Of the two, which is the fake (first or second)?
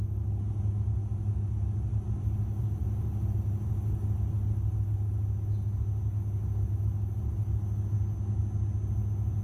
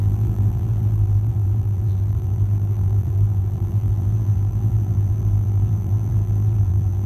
second